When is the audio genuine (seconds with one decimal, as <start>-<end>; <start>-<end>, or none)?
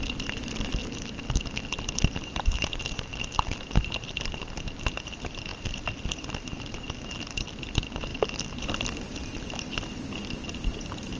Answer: 0.8-2.2; 3.1-3.6; 5.5-6.4; 8.1-10.5